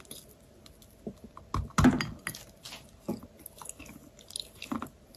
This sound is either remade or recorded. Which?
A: recorded